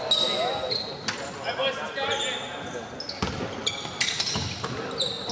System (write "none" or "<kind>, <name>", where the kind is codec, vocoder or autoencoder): none